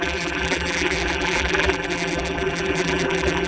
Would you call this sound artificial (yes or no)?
yes